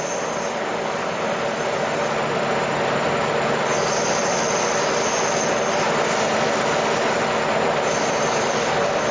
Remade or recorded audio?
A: recorded